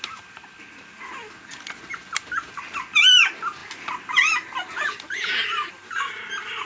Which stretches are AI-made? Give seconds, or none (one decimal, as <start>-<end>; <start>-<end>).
none